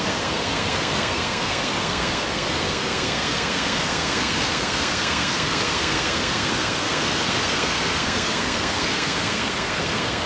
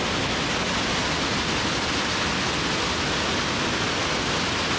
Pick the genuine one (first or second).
second